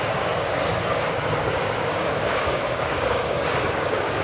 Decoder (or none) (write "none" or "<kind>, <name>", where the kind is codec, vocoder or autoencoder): codec, DAC